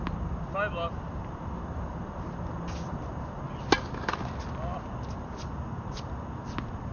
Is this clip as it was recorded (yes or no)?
yes